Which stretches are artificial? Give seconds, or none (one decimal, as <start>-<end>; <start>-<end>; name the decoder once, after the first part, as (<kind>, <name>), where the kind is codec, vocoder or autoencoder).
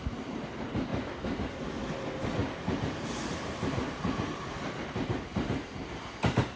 0.9-1.6 (vocoder, BigVGAN v2); 2.4-5.7